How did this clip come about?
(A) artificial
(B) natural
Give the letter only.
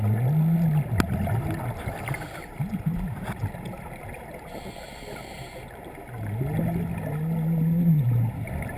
B